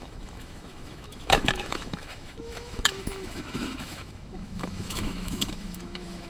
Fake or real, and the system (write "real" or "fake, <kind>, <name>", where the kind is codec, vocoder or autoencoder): fake, autoencoder, DAC-VAE